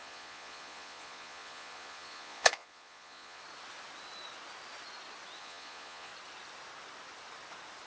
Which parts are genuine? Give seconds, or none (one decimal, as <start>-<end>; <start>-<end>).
3.4-5.4; 6.1-7.9

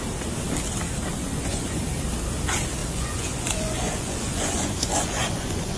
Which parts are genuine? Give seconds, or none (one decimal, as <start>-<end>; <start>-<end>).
0.0-1.1; 1.8-2.8

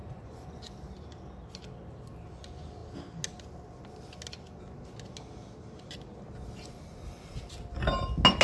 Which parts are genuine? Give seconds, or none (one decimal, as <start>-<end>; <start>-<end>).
0.6-8.4

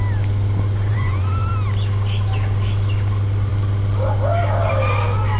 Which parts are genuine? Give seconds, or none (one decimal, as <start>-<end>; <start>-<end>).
0.0-0.9; 1.5-5.4